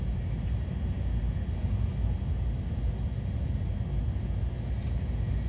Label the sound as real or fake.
real